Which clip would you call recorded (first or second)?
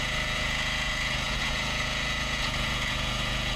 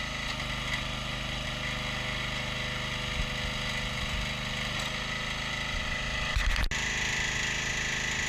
second